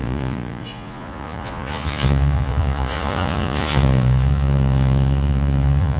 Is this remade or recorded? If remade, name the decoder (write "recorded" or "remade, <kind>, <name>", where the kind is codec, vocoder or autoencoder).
remade, vocoder, Vocos